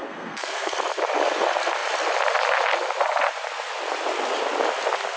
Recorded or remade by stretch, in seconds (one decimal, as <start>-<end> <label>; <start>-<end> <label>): 0.0-0.7 remade; 0.7-5.2 recorded